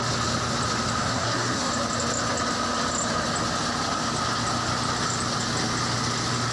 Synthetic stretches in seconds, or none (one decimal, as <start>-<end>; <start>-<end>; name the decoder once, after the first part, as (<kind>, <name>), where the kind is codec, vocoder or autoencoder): 1.0-1.7 (codec, SNAC)

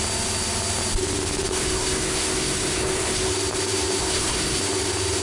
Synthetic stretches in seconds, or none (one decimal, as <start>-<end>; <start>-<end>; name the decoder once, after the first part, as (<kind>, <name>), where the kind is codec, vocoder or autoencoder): 1.5-3.3 (codec, SNAC); 4.0-4.6

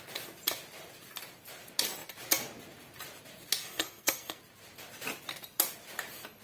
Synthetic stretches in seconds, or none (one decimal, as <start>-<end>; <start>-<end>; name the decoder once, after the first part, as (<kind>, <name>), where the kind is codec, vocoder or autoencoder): 3.6-4.4 (codec, SNAC)

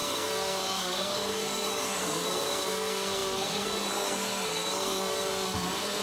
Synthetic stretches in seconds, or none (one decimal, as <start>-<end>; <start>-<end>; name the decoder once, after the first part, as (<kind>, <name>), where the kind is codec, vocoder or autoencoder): 0.0-6.0 (codec, SNAC)

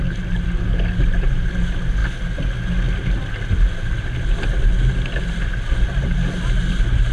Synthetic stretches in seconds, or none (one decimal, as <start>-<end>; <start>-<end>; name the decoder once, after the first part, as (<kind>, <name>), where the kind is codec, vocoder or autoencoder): none

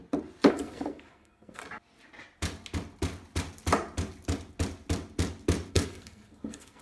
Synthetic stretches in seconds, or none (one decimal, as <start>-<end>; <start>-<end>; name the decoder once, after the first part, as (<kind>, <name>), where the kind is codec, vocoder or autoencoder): 0.5-1.6 (codec, SNAC); 5.7-6.8

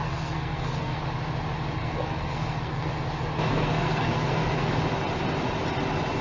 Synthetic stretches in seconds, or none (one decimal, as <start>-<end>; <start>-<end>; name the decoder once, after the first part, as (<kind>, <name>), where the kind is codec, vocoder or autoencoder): 0.0-1.0 (codec, SNAC); 1.8-2.9; 3.5-4.7